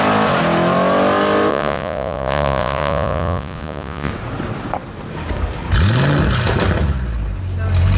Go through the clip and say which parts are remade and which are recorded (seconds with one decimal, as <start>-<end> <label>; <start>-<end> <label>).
0.0-1.5 recorded; 1.5-4.1 remade; 4.1-8.0 recorded